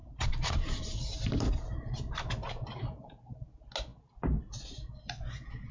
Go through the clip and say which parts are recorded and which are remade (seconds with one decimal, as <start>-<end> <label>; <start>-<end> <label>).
0.0-3.4 remade; 3.4-5.7 recorded